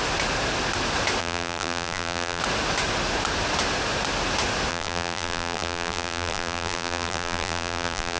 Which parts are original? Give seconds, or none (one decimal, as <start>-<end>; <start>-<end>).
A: 0.0-1.2; 2.4-4.7

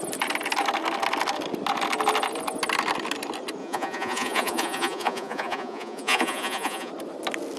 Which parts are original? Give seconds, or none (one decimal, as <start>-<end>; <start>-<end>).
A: 0.0-3.6; 6.9-7.6

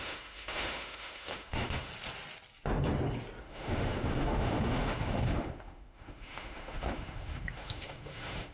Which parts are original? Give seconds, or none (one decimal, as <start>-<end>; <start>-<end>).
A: 1.9-3.4